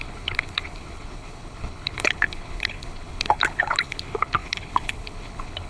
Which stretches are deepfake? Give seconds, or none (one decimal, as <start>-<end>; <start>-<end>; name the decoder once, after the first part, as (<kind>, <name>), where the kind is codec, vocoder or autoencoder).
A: 0.0-5.7 (codec, HILCodec)